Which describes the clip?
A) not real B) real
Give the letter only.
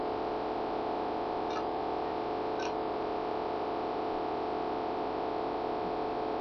B